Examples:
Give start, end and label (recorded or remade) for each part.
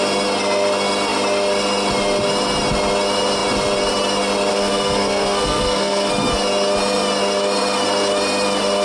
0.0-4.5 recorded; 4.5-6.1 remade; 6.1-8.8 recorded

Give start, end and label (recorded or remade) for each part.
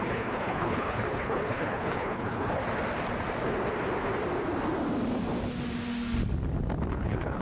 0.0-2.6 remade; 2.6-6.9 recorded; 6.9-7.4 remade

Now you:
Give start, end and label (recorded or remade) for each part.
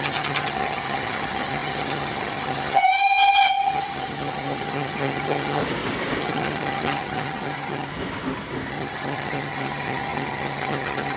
0.0-5.6 remade; 5.6-6.2 recorded; 6.2-7.9 remade; 7.9-8.7 recorded; 8.7-11.2 remade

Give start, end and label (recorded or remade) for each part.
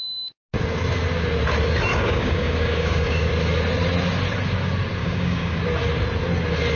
0.0-1.9 recorded; 1.9-3.3 remade; 3.3-5.0 recorded; 5.0-5.6 remade; 5.6-6.8 recorded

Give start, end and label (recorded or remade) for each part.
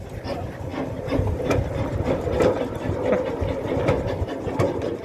0.0-5.0 recorded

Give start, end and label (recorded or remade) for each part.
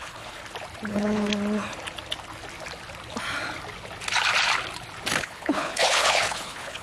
0.0-0.4 remade; 0.4-0.9 recorded; 0.9-1.3 remade; 1.3-5.2 recorded; 5.2-6.8 remade